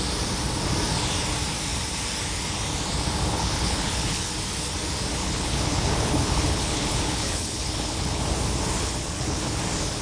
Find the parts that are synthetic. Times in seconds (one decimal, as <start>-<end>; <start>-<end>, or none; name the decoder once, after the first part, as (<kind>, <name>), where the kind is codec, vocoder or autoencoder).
3.3-4.3 (codec, HILCodec); 5.2-8.2; 8.8-9.6